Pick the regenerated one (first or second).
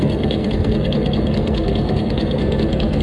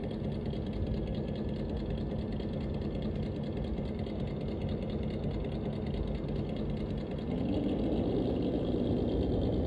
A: first